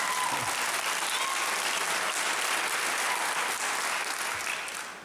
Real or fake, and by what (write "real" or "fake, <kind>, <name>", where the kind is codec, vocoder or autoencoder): real